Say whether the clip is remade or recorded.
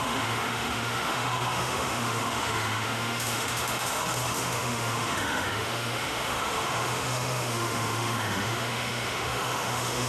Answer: remade